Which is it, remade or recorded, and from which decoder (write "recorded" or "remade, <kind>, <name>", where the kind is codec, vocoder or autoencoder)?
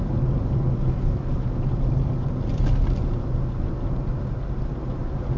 recorded